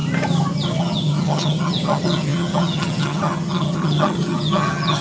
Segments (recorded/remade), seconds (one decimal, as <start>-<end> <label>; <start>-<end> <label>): 0.0-0.8 recorded; 0.8-5.0 remade